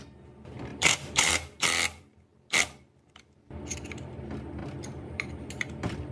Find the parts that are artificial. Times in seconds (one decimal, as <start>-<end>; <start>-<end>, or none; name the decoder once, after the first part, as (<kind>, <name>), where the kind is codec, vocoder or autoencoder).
0.7-1.3 (vocoder, BigVGAN v2); 4.6-6.1